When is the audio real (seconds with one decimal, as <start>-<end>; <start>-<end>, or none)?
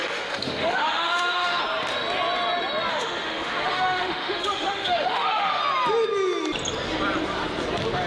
1.6-2.9; 5.6-8.1